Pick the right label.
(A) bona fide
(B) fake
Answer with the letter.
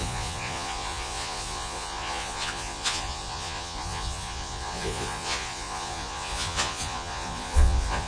B